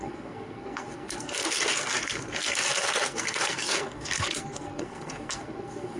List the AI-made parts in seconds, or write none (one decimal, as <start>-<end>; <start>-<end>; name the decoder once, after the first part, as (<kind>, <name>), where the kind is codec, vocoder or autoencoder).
0.0-6.0 (codec, SNAC)